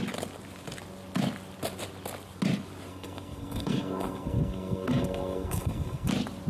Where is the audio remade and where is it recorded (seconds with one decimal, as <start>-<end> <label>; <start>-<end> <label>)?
0.0-2.9 recorded; 2.9-6.1 remade; 6.1-6.5 recorded